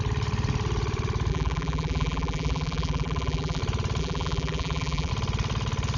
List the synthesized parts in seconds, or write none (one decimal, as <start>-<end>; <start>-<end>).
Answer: 1.3-3.6; 4.0-5.1